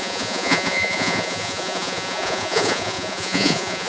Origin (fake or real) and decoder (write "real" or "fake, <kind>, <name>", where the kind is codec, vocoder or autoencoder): fake, vocoder, Vocos